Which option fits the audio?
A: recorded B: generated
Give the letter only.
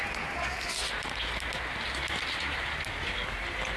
A